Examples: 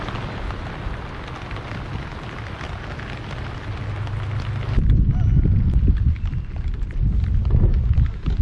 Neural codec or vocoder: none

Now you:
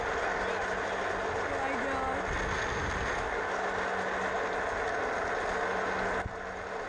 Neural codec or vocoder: none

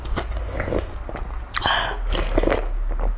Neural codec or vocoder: none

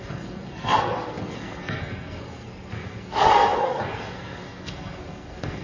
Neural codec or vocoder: codec, SNAC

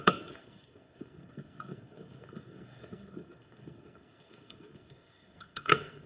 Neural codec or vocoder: codec, SNAC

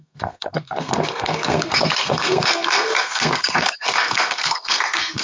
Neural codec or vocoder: codec, SNAC